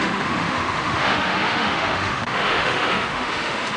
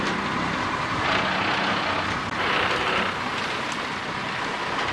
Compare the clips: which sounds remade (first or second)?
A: first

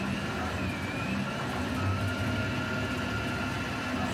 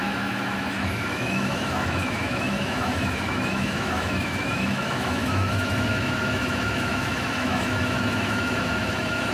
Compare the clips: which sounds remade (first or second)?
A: second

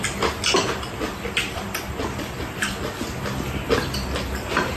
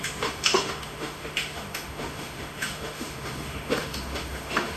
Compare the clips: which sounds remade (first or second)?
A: second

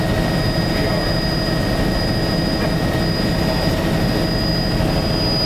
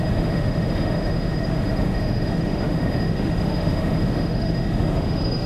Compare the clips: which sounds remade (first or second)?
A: second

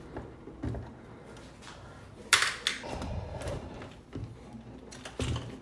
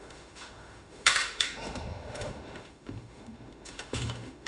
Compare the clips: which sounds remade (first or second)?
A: second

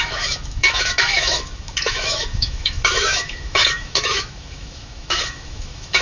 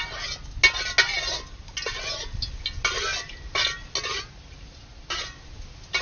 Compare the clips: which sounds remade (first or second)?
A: first